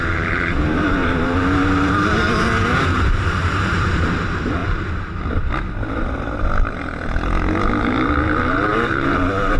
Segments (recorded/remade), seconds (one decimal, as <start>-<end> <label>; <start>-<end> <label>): 0.0-4.6 remade; 4.6-7.8 recorded; 7.8-9.6 remade